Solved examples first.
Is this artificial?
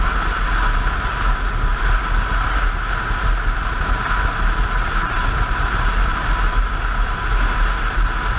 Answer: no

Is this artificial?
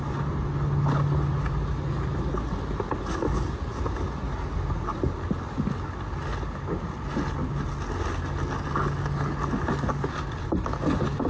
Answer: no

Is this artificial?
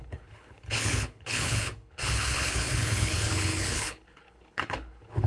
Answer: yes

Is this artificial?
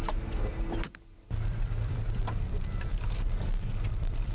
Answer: yes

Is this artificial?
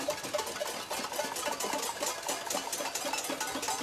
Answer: no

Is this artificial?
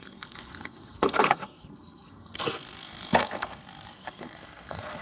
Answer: yes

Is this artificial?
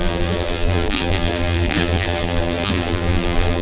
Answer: yes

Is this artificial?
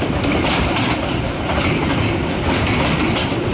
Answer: yes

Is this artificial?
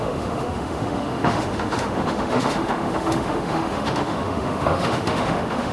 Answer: yes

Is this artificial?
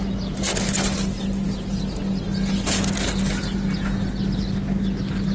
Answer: no